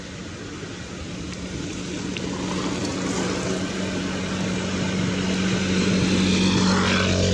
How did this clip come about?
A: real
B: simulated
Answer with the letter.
A